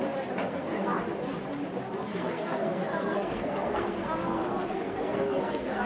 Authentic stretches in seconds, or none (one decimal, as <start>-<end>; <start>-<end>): 0.0-0.4; 1.0-2.1